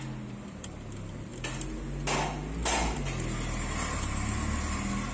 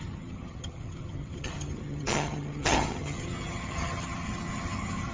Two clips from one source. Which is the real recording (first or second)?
first